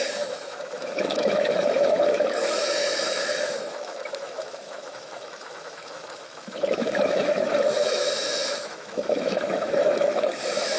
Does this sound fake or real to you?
fake